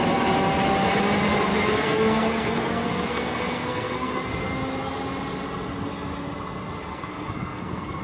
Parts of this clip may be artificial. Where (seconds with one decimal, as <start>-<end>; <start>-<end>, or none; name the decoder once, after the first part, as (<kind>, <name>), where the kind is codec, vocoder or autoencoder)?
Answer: 1.5-4.2 (codec, SNAC); 6.9-8.0